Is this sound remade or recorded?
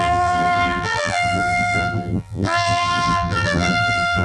remade